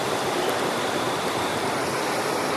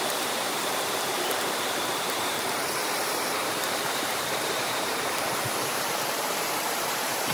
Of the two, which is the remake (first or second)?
second